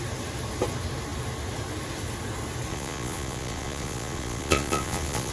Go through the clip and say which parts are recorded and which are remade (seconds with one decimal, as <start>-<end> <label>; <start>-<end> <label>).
0.0-2.7 recorded; 2.7-5.3 remade